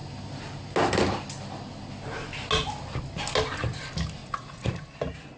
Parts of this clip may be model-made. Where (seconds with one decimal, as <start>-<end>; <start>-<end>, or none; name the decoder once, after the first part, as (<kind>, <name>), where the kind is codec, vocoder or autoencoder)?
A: 4.2-4.9 (vocoder, Vocos)